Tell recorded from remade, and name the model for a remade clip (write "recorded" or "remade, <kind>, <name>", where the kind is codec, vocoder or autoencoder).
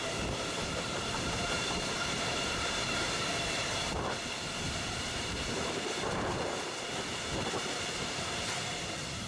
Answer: remade, vocoder, BigVGAN v2